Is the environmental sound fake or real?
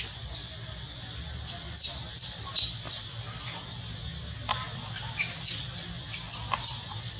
real